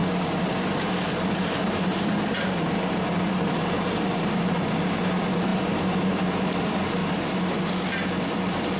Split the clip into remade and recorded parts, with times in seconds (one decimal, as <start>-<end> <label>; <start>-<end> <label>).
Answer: 0.0-0.7 recorded; 0.7-7.0 remade; 7.0-8.3 recorded; 8.3-8.8 remade